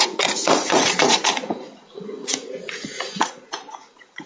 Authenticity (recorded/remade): remade